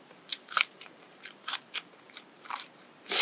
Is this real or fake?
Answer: fake